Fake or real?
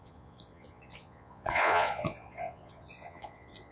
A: fake